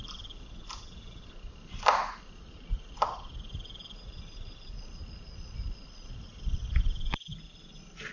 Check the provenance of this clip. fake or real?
real